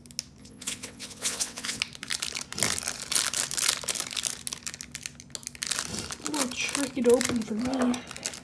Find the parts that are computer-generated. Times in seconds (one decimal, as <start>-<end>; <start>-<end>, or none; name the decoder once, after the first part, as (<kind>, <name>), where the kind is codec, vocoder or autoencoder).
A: 0.4-1.8 (vocoder, WaveNeXt)